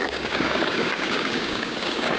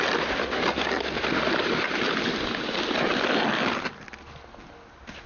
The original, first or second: second